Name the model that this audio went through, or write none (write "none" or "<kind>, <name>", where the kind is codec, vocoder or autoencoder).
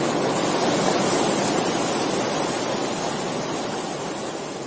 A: none